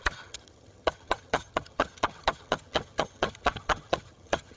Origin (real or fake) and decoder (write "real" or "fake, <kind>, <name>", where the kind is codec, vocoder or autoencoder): fake, vocoder, HiFi-GAN